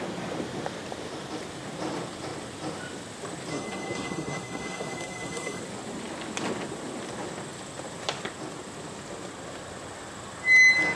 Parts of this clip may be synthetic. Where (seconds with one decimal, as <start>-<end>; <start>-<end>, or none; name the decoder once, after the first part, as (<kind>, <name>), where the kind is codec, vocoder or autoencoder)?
3.5-5.6 (codec, SNAC)